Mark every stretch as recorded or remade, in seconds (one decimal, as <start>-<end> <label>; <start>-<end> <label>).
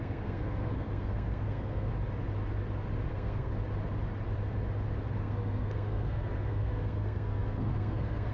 0.0-1.9 remade; 1.9-3.1 recorded; 3.1-3.5 remade; 3.5-5.2 recorded; 5.2-8.3 remade